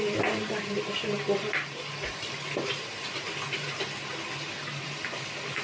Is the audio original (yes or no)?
yes